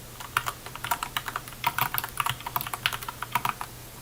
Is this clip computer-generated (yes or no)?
no